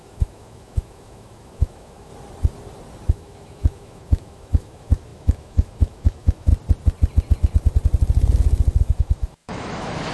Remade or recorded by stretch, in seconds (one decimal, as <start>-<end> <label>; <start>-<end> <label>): 0.0-2.1 remade; 2.1-3.1 recorded; 3.1-6.5 remade; 6.5-8.8 recorded; 8.8-10.1 remade